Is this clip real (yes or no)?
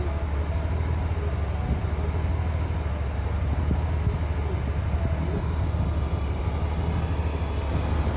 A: yes